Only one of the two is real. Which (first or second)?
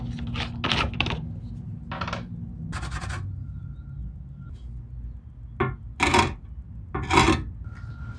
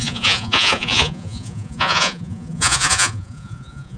first